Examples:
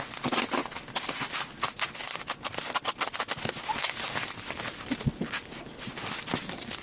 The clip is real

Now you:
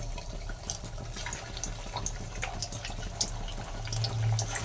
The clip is real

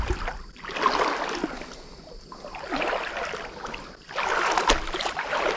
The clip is real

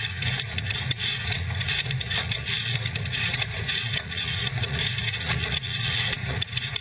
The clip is fake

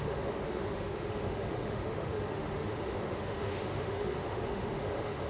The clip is fake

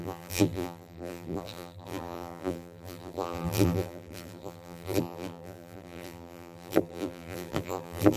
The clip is fake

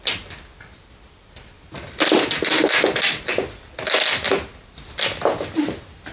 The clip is real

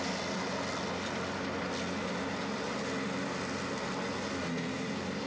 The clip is real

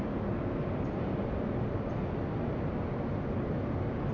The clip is real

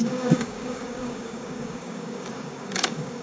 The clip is fake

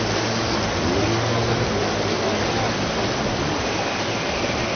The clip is real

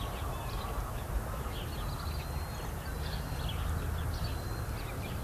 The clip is real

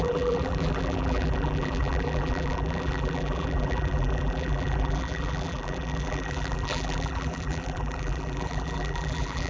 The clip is fake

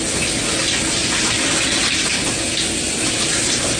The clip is real